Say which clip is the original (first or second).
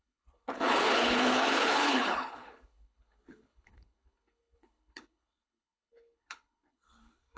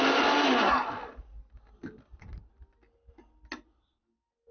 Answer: second